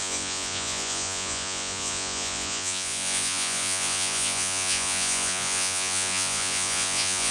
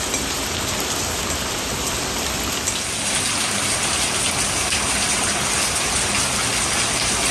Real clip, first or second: second